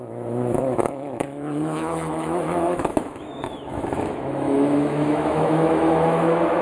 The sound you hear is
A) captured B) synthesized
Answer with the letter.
B